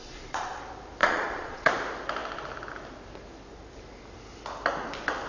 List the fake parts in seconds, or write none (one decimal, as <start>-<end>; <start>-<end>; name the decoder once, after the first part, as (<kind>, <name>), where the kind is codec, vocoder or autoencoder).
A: 0.0-0.6 (vocoder, Vocos); 1.0-1.7